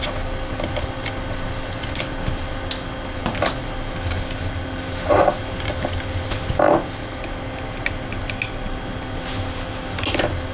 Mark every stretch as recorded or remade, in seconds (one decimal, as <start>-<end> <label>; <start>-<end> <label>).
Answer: 0.0-10.5 recorded

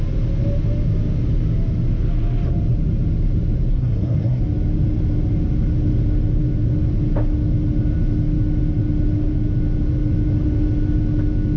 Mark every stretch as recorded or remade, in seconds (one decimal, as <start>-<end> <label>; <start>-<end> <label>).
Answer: 0.0-3.7 recorded; 3.7-4.4 remade; 4.4-11.6 recorded

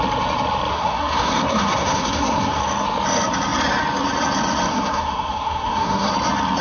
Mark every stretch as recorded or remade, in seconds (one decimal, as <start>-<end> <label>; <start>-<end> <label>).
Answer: 0.0-0.7 recorded; 0.7-2.6 remade; 2.6-4.7 recorded; 4.7-6.1 remade; 6.1-6.6 recorded

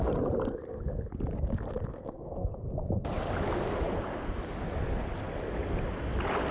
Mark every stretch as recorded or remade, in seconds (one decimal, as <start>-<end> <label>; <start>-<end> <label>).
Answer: 0.0-1.9 recorded; 1.9-2.5 remade; 2.5-6.5 recorded

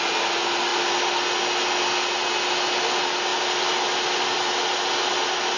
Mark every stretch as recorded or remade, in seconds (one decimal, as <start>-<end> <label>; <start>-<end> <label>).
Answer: 0.0-5.6 recorded

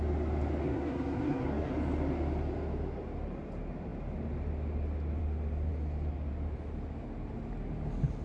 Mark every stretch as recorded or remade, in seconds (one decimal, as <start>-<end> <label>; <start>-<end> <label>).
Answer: 0.0-0.6 recorded; 0.6-1.7 remade; 1.7-8.2 recorded

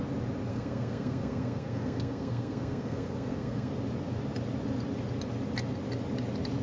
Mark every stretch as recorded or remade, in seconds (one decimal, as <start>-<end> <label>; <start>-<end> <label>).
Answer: 0.0-0.5 recorded; 0.5-3.7 remade; 3.7-6.6 recorded